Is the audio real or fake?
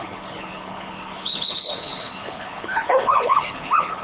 fake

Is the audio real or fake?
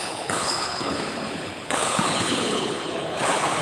fake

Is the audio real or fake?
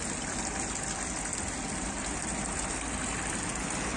real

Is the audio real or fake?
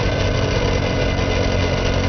real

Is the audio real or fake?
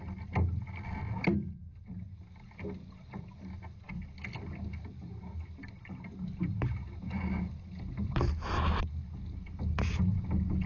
real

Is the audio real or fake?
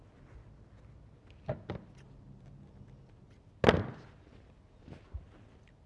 real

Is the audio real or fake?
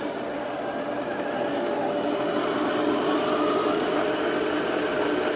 real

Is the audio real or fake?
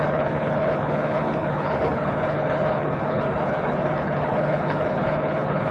fake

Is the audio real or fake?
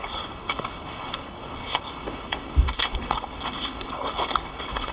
fake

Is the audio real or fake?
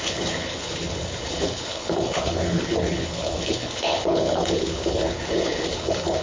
fake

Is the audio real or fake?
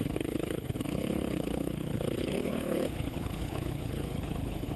fake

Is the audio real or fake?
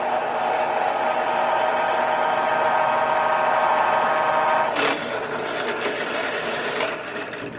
real